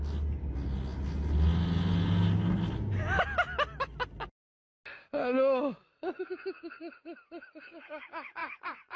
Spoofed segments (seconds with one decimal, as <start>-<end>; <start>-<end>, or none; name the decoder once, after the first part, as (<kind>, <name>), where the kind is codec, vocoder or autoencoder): 8.4-9.0 (vocoder, BigVGAN v2)